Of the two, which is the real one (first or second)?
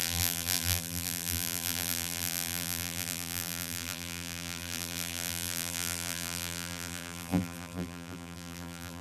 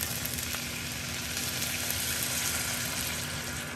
second